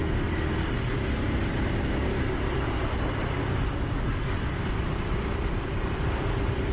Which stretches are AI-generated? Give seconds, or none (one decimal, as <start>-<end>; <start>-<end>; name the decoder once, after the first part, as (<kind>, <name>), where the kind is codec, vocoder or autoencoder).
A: none